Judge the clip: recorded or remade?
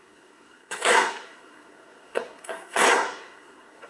remade